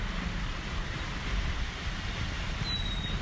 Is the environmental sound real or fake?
real